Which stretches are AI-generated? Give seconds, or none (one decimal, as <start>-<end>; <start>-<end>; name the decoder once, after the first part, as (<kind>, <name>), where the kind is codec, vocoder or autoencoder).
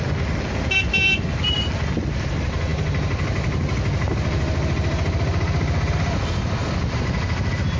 none